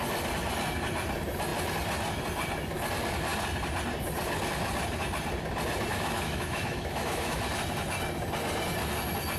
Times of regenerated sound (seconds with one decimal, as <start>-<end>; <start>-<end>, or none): 5.9-7.4